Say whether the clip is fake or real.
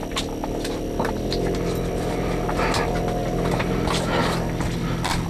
real